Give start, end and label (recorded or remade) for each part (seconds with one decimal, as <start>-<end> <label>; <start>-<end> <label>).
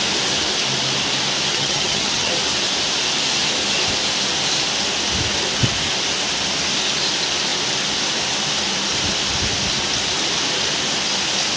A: 0.0-1.5 recorded; 1.5-2.3 remade; 2.3-11.6 recorded